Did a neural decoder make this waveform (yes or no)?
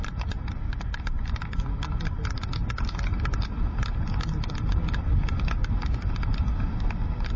no